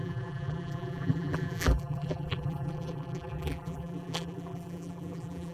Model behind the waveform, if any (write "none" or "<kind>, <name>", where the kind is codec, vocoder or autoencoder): vocoder, BigVGAN v2